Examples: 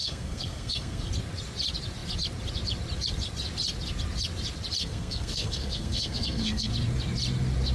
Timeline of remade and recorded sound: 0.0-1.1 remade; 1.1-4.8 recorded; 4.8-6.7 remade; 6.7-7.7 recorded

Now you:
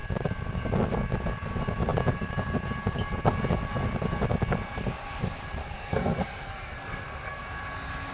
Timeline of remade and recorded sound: 0.0-5.6 recorded; 5.6-7.4 remade; 7.4-8.1 recorded

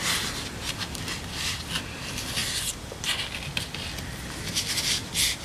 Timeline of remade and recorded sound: 0.0-5.4 recorded

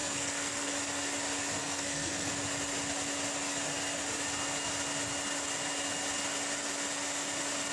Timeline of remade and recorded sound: 0.0-0.7 remade; 0.7-1.6 recorded; 1.6-2.3 remade; 2.3-7.7 recorded

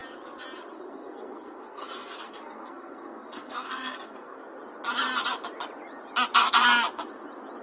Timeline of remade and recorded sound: 0.0-0.7 recorded; 0.7-4.4 remade; 4.4-7.6 recorded

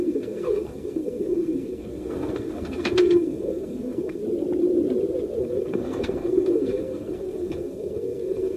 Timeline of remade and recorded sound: 0.0-4.2 remade; 4.2-5.4 recorded; 5.4-8.6 remade